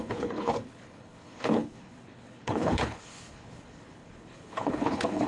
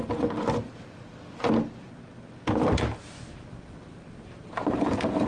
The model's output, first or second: first